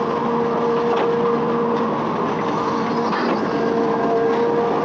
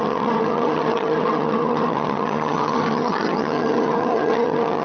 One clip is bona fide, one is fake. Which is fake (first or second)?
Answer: second